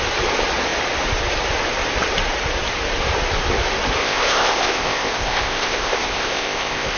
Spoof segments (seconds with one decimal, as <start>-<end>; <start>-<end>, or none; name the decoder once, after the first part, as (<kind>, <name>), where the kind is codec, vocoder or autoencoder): 4.0-7.0 (codec, ZipCodec)